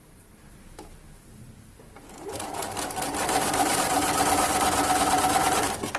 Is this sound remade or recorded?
remade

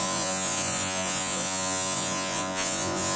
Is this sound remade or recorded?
remade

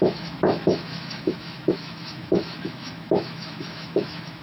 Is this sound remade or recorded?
remade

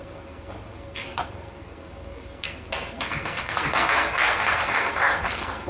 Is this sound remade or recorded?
remade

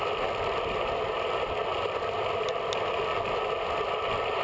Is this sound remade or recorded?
recorded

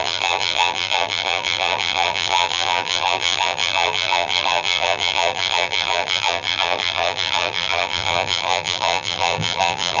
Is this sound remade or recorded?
remade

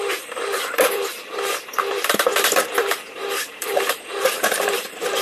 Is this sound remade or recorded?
remade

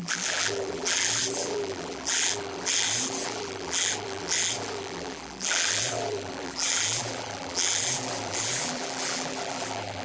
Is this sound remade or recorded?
remade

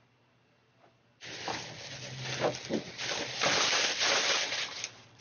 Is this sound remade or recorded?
recorded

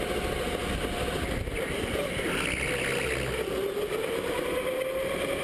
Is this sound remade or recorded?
recorded